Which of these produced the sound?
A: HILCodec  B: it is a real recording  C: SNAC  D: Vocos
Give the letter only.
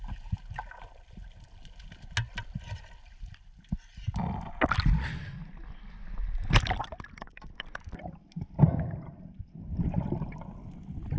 B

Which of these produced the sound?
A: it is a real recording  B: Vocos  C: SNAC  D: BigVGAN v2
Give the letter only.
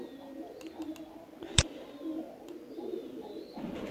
A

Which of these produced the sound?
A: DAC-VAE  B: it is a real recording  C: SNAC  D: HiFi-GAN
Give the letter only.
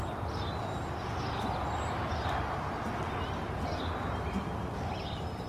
B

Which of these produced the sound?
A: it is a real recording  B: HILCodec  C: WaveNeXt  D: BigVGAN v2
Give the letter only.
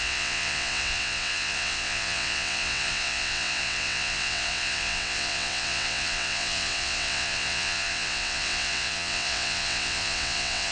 C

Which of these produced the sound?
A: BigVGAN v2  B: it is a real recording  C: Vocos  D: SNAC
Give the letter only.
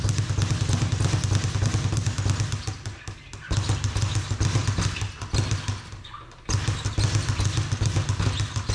B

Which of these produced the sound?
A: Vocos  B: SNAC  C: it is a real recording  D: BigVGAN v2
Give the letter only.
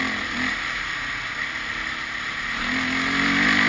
C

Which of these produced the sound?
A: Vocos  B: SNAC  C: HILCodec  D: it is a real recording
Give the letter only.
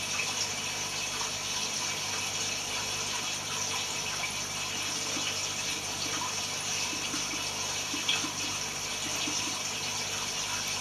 D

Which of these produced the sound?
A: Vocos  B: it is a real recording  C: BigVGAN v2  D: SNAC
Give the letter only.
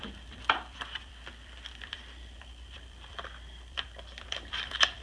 C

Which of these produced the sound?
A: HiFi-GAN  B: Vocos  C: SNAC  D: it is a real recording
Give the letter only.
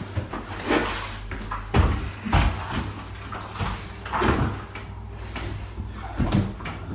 D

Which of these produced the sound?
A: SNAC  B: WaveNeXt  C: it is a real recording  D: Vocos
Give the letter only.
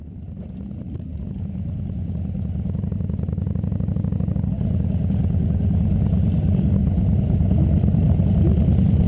C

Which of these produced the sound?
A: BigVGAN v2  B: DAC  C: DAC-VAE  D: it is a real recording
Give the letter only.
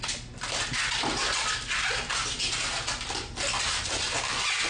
D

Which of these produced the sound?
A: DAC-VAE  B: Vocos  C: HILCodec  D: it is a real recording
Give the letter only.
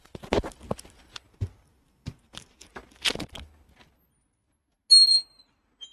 D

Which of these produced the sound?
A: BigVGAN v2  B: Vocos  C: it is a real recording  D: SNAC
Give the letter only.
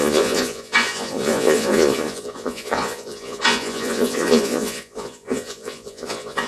B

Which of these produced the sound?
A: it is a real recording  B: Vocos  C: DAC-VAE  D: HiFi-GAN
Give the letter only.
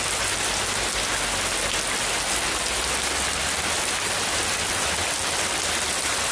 A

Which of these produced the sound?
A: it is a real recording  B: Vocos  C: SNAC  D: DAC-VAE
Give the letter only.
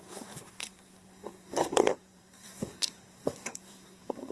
C